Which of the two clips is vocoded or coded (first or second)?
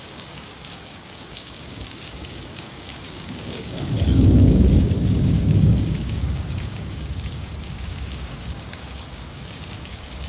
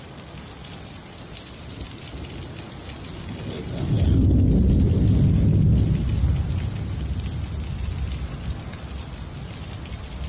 first